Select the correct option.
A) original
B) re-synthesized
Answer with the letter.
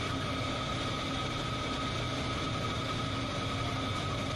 A